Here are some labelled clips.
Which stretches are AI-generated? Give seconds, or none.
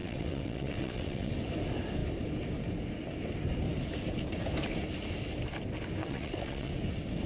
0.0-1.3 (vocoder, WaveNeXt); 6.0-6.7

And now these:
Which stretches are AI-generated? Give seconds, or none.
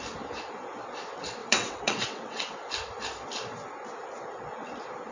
1.4-2.7 (vocoder, WaveNeXt)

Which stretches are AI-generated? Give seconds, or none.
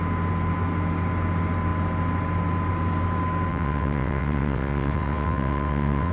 3.5-6.1 (vocoder, WaveNeXt)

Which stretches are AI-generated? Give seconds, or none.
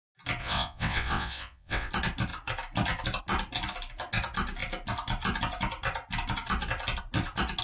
0.4-1.9 (vocoder, WaveNeXt)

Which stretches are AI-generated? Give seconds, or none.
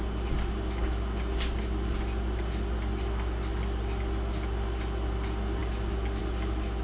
none